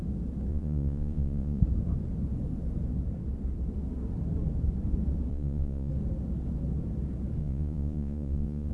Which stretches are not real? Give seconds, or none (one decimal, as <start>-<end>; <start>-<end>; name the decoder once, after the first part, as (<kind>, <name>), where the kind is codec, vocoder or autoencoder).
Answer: 0.5-1.6 (vocoder, Vocos); 5.3-5.9; 7.4-8.7